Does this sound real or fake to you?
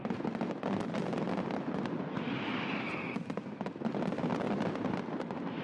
real